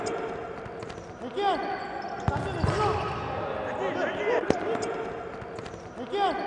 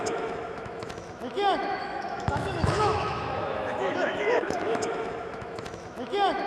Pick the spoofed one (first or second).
second